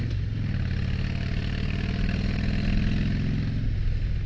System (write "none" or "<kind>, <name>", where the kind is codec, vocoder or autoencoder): none